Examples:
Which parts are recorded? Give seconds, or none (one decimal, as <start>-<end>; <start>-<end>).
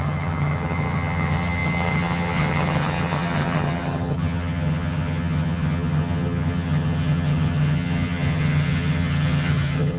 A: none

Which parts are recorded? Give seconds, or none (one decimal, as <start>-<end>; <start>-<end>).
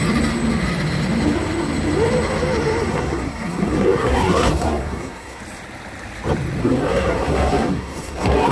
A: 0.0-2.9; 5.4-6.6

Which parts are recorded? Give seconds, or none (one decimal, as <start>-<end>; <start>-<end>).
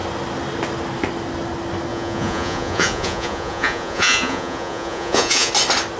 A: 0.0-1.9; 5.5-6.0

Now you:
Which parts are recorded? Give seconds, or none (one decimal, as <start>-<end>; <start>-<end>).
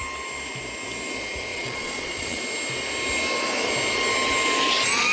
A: 0.0-1.5; 2.4-5.1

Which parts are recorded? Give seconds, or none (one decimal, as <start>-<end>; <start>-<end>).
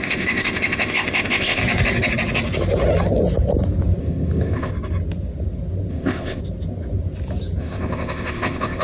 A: 1.6-4.0; 4.7-5.9; 6.4-7.6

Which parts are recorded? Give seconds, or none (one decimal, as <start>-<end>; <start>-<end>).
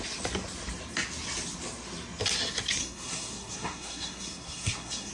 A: 0.0-2.8